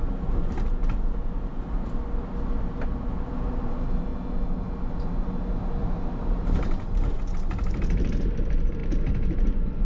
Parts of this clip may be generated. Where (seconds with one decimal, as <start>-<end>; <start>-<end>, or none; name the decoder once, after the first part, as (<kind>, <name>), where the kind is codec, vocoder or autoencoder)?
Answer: 0.0-0.8 (vocoder, BigVGAN v2); 3.6-4.1; 5.8-9.8